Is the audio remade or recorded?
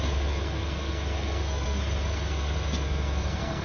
remade